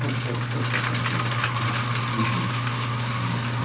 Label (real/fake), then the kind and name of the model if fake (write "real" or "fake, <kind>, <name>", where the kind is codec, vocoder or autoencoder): real